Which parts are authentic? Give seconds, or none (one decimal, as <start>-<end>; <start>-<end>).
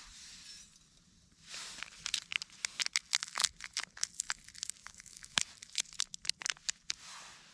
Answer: 0.0-4.8; 5.4-7.5